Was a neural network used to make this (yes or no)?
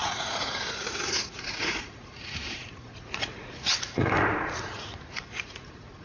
yes